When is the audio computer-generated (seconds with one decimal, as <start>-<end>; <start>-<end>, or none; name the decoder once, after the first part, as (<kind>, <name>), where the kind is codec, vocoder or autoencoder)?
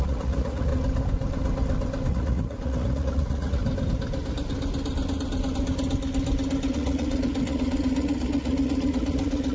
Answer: 0.0-0.7 (vocoder, Vocos); 2.1-3.6; 6.7-9.5